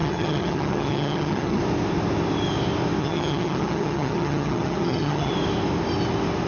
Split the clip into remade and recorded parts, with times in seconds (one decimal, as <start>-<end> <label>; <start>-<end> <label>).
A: 0.0-1.6 remade; 1.6-3.0 recorded; 3.0-5.3 remade; 5.3-6.5 recorded